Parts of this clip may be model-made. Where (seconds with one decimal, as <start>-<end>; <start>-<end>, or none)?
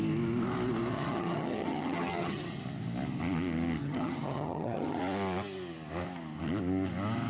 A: 0.9-2.6; 3.8-5.0